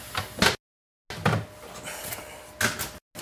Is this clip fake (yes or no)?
no